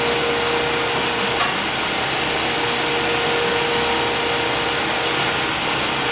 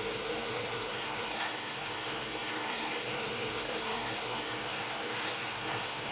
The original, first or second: first